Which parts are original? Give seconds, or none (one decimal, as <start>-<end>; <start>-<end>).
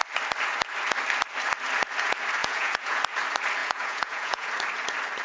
0.0-2.4; 3.0-3.6; 4.5-5.2